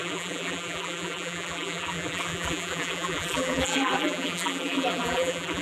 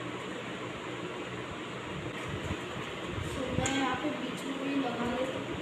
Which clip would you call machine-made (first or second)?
first